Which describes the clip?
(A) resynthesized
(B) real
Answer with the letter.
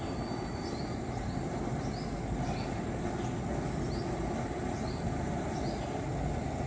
B